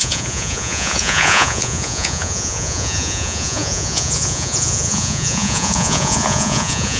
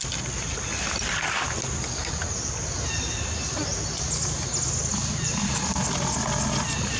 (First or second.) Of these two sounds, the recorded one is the second